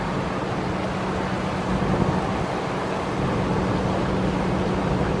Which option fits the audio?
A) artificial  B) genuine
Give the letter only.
B